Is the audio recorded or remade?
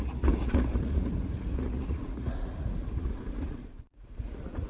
remade